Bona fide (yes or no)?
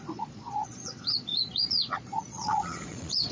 no